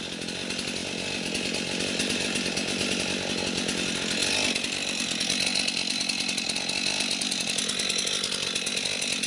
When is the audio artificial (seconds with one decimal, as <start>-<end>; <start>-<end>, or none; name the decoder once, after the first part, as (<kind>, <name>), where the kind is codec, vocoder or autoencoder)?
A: none